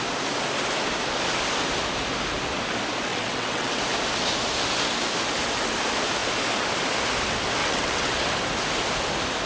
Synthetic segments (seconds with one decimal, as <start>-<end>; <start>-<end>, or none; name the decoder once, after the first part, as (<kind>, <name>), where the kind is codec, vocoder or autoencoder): 3.1-3.8 (vocoder, WaveNeXt); 7.6-8.2